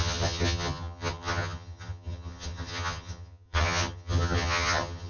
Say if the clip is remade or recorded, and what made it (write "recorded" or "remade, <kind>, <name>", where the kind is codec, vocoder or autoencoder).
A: remade, vocoder, HiFi-GAN